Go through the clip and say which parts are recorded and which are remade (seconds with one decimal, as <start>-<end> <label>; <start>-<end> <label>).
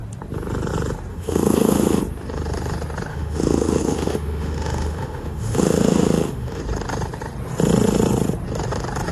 0.0-1.1 recorded; 1.1-2.0 remade; 2.0-3.1 recorded; 3.1-6.6 remade; 6.6-9.1 recorded